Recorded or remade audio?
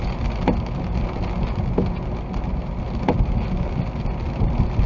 recorded